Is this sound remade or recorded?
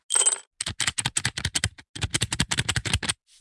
recorded